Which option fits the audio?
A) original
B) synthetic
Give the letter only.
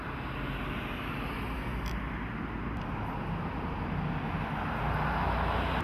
A